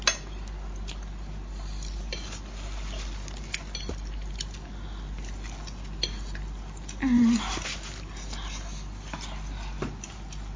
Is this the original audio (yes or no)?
yes